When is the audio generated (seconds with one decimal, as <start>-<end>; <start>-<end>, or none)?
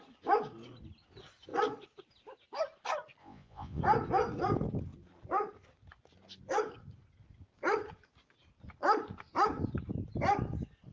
3.2-3.8